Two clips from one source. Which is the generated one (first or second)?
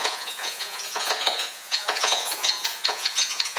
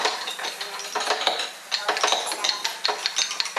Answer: first